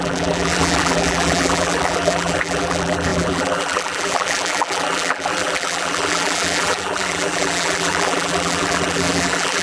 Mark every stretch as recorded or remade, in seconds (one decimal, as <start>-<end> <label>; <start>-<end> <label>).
0.0-9.6 remade

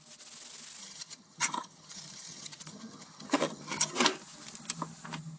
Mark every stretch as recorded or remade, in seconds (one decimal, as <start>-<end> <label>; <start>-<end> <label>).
0.0-0.8 recorded; 0.8-4.0 remade; 4.0-5.4 recorded

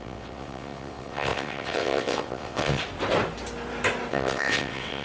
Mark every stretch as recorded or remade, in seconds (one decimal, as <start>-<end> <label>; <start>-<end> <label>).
0.0-2.8 remade; 2.8-4.1 recorded; 4.1-5.0 remade

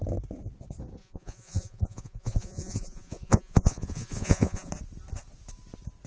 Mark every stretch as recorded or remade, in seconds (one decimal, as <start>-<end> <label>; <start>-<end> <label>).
0.0-1.0 recorded; 1.0-4.7 remade; 4.7-6.1 recorded

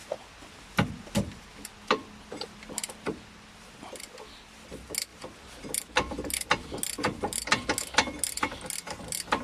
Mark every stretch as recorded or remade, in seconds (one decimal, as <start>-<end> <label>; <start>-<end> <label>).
0.0-4.0 remade; 4.0-5.1 recorded; 5.1-5.7 remade; 5.7-9.4 recorded

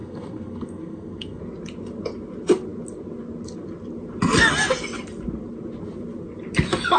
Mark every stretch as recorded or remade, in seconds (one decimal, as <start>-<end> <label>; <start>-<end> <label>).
0.0-1.4 remade; 1.4-7.0 recorded

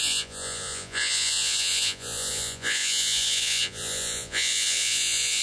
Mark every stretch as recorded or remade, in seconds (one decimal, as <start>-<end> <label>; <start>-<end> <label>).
0.0-5.4 remade

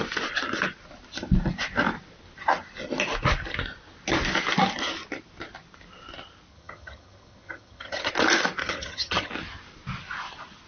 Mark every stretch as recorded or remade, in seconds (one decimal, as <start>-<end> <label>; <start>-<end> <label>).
0.0-6.5 recorded; 6.5-8.1 remade; 8.1-8.6 recorded; 8.6-9.3 remade; 9.3-10.7 recorded